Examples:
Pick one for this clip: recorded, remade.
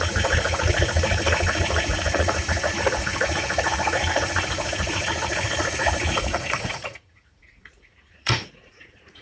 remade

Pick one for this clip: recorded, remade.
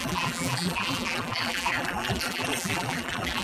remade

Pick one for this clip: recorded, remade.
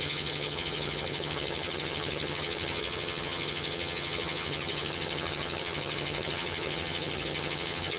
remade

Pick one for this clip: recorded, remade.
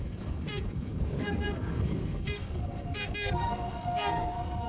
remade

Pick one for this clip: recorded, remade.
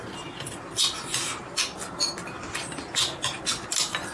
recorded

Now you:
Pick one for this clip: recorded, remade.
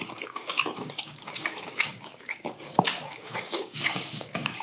remade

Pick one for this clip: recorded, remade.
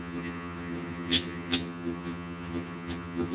remade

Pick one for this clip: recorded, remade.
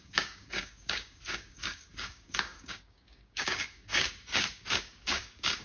remade